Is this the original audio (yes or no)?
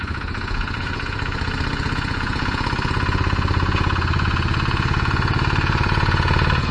no